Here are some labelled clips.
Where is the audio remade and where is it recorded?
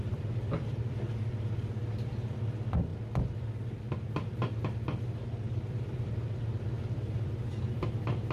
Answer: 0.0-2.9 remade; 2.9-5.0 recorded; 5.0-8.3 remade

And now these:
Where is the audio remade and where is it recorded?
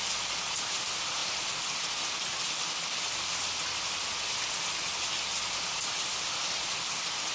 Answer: 0.0-7.3 recorded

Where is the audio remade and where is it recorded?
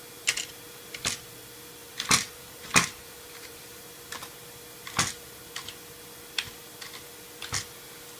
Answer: 0.0-1.8 recorded; 1.8-3.8 remade; 3.8-8.2 recorded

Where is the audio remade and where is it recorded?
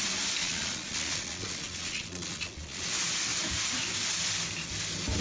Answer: 0.0-0.4 recorded; 0.4-2.9 remade; 2.9-5.2 recorded